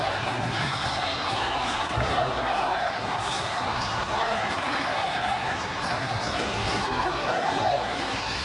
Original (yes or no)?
no